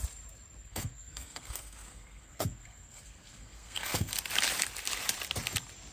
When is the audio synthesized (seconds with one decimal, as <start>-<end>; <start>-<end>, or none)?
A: 0.6-4.1